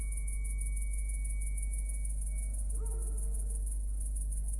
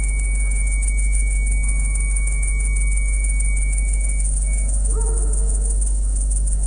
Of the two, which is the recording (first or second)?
first